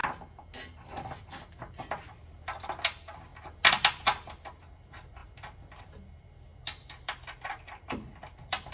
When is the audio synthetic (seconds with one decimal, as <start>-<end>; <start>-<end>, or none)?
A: 1.7-3.3; 4.0-8.7